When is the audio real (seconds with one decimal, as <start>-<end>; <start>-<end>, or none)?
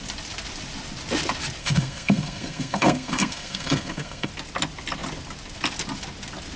0.0-1.6; 4.3-6.6